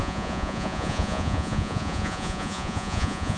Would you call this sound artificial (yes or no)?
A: yes